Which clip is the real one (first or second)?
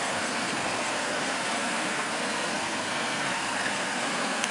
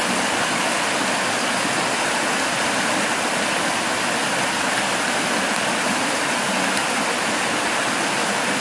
second